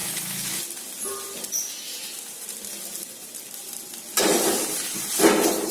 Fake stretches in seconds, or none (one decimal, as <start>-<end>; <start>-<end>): 0.0-0.6

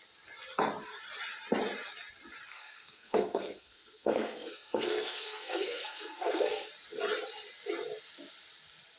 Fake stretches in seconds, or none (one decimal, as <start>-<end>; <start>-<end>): 2.5-6.7

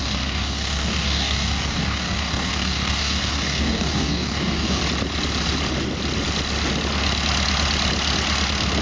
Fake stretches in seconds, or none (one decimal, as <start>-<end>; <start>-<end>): 0.0-4.8

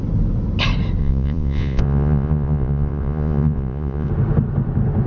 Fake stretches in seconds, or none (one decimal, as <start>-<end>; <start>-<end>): 1.0-4.1